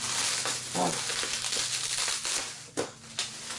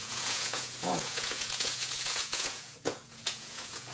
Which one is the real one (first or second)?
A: first